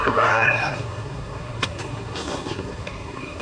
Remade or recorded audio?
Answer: remade